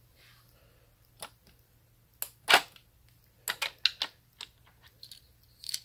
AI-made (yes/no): no